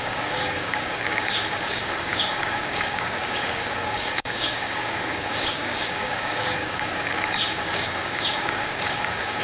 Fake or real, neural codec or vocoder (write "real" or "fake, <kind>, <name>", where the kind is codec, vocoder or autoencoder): fake, codec, DAC